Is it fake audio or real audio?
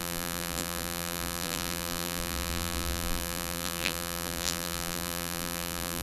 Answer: fake